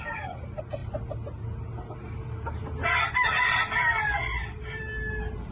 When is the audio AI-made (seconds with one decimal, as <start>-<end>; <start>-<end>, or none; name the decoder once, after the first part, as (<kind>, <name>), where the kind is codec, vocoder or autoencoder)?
none